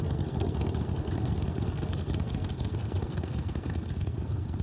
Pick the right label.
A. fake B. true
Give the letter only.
A